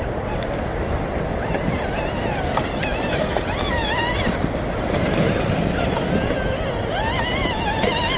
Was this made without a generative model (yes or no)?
yes